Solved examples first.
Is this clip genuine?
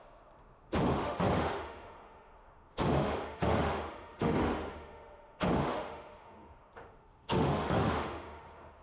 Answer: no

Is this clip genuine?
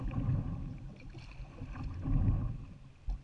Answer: yes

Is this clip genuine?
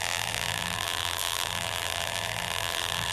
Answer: no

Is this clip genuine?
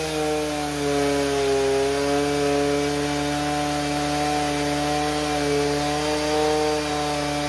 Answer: yes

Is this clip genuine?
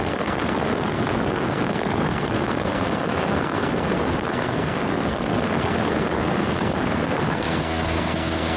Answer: no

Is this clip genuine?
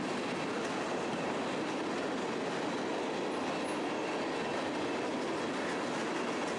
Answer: yes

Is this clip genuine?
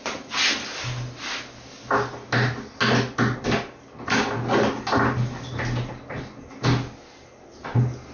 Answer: yes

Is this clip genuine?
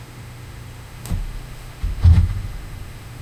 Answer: no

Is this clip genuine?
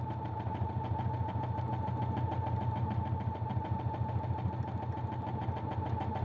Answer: yes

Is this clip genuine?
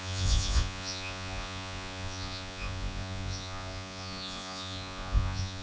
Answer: no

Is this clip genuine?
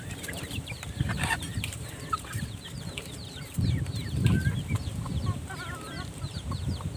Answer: no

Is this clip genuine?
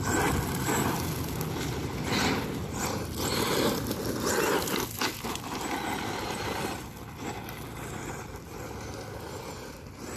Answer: yes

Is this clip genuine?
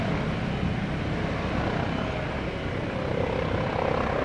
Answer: yes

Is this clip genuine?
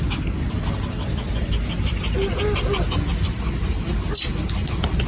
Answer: yes